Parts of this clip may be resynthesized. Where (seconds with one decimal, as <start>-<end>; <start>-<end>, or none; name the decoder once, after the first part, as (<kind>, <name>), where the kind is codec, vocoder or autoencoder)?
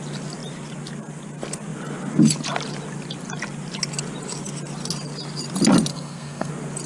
5.9-6.5 (codec, SNAC)